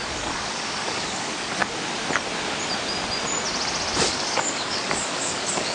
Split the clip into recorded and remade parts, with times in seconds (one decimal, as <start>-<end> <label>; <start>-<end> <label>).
0.0-1.6 remade; 1.6-4.0 recorded; 4.0-5.7 remade